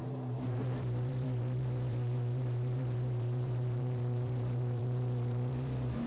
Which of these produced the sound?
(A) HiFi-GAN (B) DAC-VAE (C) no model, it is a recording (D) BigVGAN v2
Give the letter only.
D